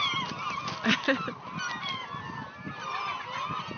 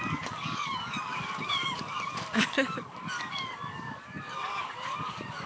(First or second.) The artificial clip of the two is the second